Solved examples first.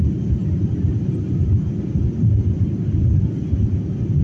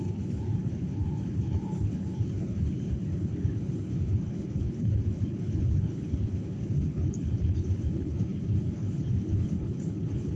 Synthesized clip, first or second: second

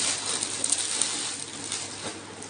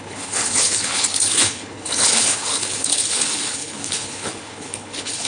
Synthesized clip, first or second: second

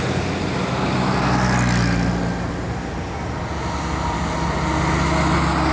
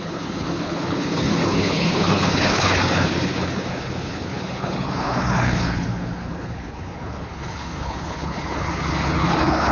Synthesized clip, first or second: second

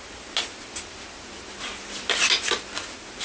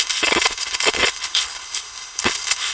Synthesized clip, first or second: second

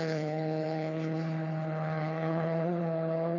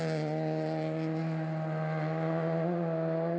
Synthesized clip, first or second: first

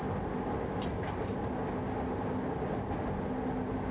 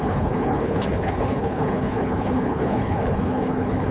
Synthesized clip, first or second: second